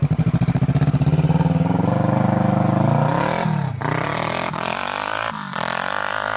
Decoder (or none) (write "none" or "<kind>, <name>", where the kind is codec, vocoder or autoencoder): none